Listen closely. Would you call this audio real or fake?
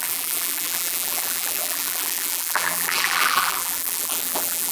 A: fake